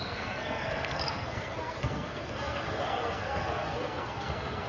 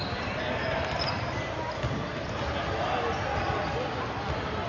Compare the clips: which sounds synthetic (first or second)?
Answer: first